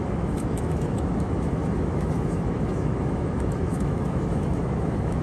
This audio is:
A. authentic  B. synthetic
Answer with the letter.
B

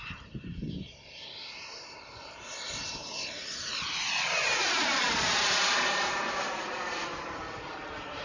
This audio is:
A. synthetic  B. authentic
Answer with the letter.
A